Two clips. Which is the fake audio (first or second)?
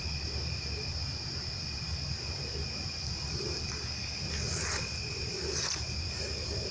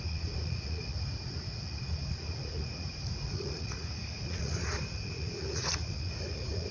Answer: second